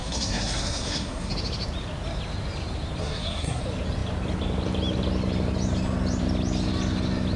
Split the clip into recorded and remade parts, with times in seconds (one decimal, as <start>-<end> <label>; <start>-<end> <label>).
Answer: 0.0-1.3 remade; 1.3-3.0 recorded; 3.0-3.6 remade; 3.6-7.4 recorded